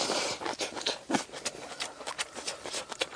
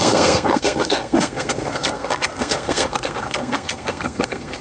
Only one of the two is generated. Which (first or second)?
second